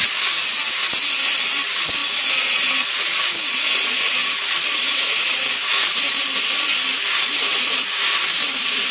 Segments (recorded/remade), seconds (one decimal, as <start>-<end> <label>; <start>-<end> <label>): 0.0-8.9 recorded